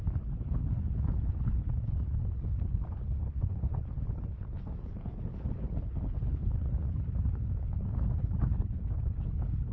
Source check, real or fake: fake